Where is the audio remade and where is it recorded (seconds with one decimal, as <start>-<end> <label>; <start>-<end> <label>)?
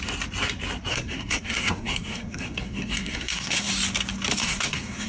0.0-0.9 recorded; 0.9-3.7 remade; 3.7-4.4 recorded; 4.4-5.1 remade